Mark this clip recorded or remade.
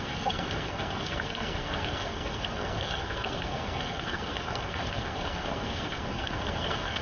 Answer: remade